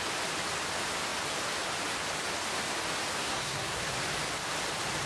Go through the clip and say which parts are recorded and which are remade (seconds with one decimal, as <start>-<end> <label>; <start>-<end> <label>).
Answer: 0.0-3.2 recorded; 3.2-3.8 remade; 3.8-5.1 recorded